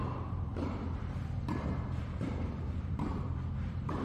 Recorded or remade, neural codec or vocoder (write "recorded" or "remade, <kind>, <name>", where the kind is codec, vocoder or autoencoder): remade, vocoder, BigVGAN v2